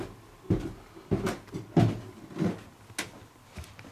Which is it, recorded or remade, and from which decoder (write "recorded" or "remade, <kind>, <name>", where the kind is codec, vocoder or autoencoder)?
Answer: recorded